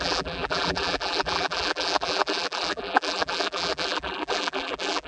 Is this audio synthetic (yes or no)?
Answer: yes